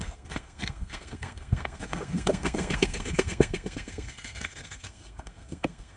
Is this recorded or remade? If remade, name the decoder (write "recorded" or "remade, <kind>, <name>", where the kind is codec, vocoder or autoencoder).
remade, codec, SNAC